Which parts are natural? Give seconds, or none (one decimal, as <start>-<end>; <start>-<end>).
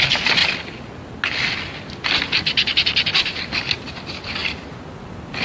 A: 0.0-5.4